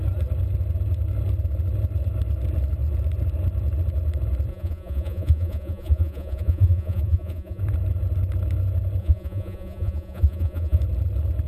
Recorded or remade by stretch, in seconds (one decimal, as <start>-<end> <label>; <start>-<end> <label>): 0.0-4.5 recorded; 4.5-7.6 remade; 7.6-9.0 recorded; 9.0-10.8 remade; 10.8-11.5 recorded